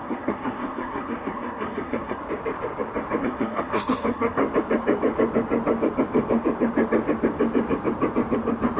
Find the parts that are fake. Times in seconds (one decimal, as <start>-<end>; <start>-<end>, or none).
0.0-2.2; 3.2-4.4